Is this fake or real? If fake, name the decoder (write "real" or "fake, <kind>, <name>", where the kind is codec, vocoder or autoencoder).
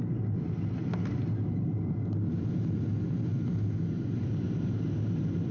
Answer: real